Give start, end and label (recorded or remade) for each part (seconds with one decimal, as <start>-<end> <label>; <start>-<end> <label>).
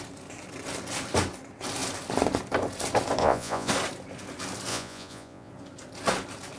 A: 0.0-3.2 recorded; 3.2-3.7 remade; 3.7-4.7 recorded; 4.7-5.5 remade; 5.5-6.6 recorded